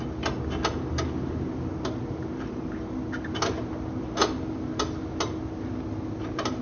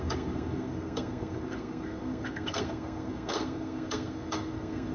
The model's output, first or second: second